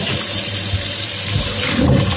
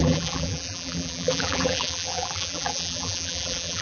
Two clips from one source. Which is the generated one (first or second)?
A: second